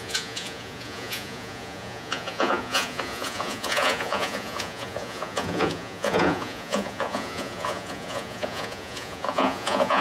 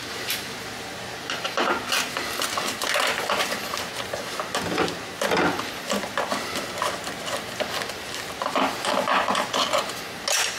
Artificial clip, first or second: first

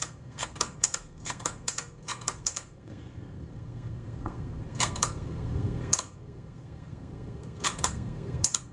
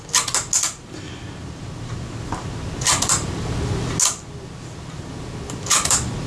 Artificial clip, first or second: first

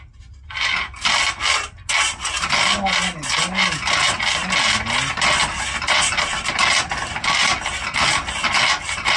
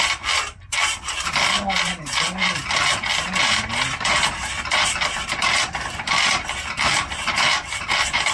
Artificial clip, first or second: second